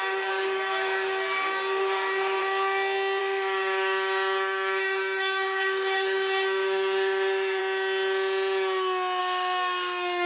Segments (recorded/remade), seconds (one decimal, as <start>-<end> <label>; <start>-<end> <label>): 0.0-2.4 remade; 2.4-3.2 recorded; 3.2-7.6 remade; 7.6-9.2 recorded; 9.2-10.3 remade